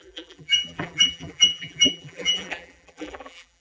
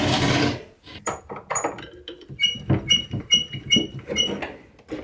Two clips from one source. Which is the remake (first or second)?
first